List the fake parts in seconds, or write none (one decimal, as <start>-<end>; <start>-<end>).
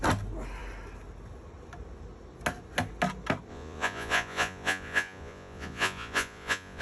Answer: 3.5-6.8